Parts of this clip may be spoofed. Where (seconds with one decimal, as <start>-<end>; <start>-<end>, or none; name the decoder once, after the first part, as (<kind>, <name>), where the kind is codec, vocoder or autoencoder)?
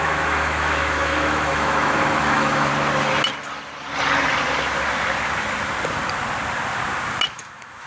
0.0-2.7 (autoencoder, DAC-VAE); 7.3-7.9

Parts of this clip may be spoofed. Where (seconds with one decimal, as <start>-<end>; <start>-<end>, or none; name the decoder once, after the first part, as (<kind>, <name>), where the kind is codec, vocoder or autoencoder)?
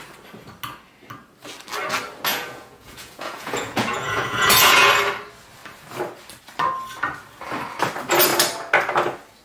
2.3-4.9 (vocoder, Vocos)